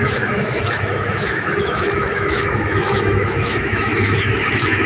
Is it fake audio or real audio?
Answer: fake